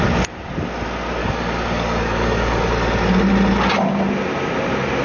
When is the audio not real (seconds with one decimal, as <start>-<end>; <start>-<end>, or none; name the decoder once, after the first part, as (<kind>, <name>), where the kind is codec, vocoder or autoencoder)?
1.2-2.7 (codec, DAC)